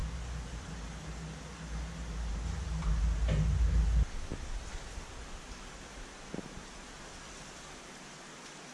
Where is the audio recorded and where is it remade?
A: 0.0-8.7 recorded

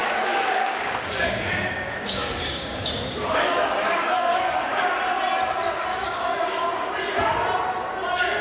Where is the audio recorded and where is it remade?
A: 0.0-4.9 remade; 4.9-5.9 recorded; 5.9-6.9 remade; 6.9-8.4 recorded

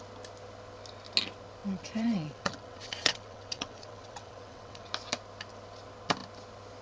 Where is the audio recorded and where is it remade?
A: 0.0-1.6 recorded; 1.6-4.9 remade; 4.9-6.8 recorded

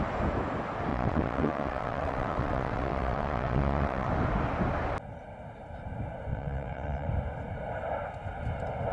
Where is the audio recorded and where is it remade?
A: 0.0-0.9 recorded; 0.9-4.1 remade; 4.1-6.3 recorded; 6.3-7.1 remade; 7.1-8.9 recorded

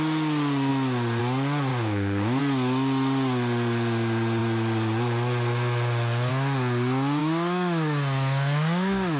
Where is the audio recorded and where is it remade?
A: 0.0-1.7 recorded; 1.7-2.4 remade; 2.4-7.2 recorded; 7.2-9.2 remade